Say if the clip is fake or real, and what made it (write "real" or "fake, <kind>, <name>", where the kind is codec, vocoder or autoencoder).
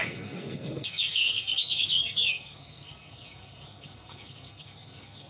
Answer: fake, codec, SNAC